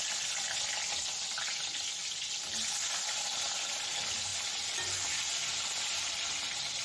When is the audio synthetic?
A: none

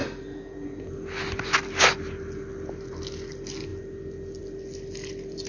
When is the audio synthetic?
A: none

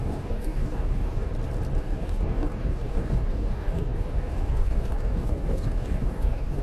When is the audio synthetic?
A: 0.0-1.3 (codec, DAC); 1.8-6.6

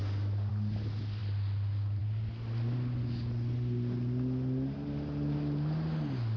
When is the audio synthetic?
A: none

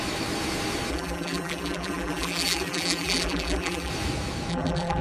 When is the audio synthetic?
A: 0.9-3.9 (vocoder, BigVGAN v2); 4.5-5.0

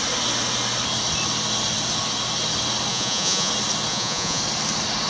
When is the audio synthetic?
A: 2.9-3.5 (vocoder, Vocos); 3.9-4.4

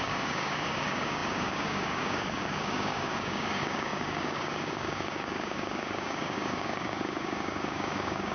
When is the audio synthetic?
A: 0.0-8.3 (codec, DAC)

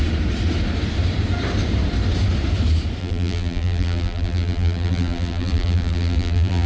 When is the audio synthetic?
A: 3.0-6.7 (vocoder, BigVGAN v2)